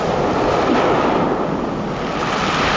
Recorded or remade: recorded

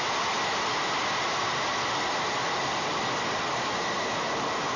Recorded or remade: recorded